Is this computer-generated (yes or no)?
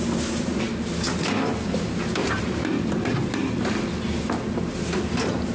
no